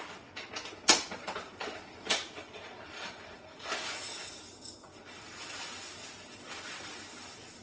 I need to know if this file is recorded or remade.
recorded